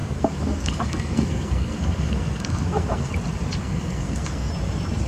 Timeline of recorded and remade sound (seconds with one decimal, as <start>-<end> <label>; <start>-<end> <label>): 0.0-3.1 remade; 3.1-3.6 recorded; 3.6-4.5 remade; 4.5-5.1 recorded